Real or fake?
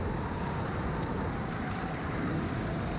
real